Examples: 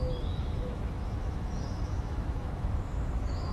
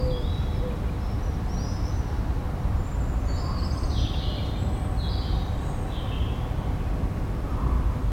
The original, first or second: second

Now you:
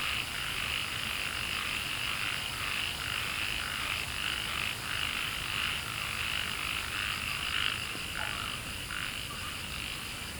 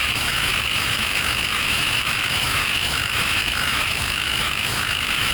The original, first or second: first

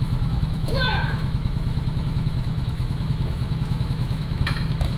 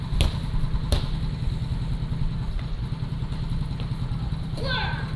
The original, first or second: second